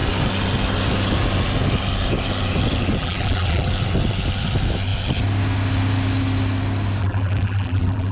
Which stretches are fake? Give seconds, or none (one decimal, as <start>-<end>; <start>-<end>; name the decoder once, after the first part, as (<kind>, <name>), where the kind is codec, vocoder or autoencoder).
3.0-3.7 (vocoder, BigVGAN v2); 7.0-8.1